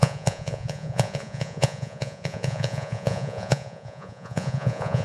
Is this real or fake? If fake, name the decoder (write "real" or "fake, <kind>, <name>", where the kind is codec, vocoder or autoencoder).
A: fake, vocoder, Vocos